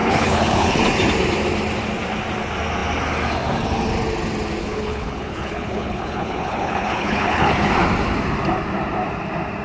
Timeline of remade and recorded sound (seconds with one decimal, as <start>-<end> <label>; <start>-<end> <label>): 0.0-0.8 remade; 0.8-4.6 recorded; 4.6-7.7 remade; 7.7-9.6 recorded

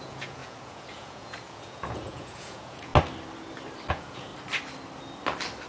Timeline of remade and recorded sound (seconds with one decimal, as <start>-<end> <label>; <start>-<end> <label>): 0.0-2.9 remade; 2.9-3.9 recorded; 3.9-4.3 remade; 4.3-5.7 recorded

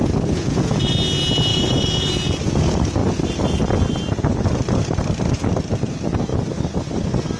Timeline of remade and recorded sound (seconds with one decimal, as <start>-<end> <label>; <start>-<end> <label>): 0.0-0.9 remade; 0.9-1.5 recorded; 1.5-2.1 remade; 2.1-7.4 recorded

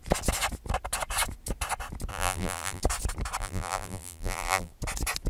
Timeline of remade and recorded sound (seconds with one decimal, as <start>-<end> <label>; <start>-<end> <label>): 0.0-2.1 recorded; 2.1-2.8 remade; 2.8-3.4 recorded; 3.4-4.7 remade; 4.7-5.3 recorded

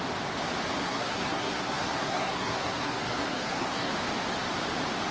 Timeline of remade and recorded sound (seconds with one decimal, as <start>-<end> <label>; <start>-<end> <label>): 0.0-0.8 recorded; 0.8-3.9 remade; 3.9-5.1 recorded

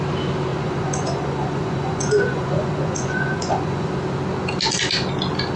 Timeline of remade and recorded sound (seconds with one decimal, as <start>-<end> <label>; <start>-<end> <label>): 0.0-0.5 recorded; 0.5-3.9 remade; 3.9-5.6 recorded

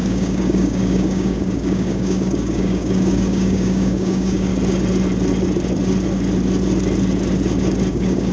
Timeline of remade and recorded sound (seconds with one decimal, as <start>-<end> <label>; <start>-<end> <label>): 0.0-4.5 remade; 4.5-7.9 recorded; 7.9-8.3 remade